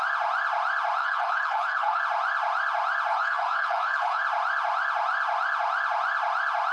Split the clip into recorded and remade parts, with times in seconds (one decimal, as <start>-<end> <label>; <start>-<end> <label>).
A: 0.0-1.0 recorded; 1.0-2.0 remade; 2.0-3.1 recorded; 3.1-4.2 remade; 4.2-6.7 recorded